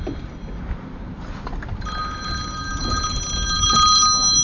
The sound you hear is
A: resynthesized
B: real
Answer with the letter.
B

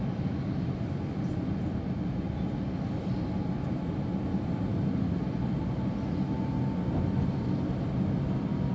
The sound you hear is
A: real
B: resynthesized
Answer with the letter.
A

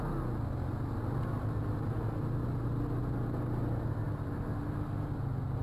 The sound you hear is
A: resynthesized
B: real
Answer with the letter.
B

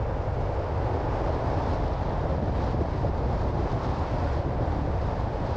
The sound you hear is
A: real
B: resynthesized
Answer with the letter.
A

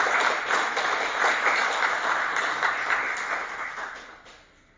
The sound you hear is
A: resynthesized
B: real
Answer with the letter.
B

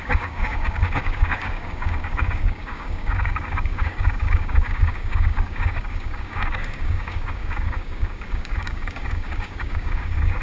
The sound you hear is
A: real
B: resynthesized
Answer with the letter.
B